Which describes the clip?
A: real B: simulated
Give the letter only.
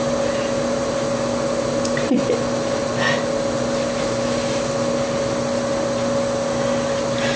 A